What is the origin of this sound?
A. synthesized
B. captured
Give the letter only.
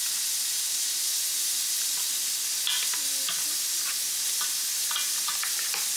B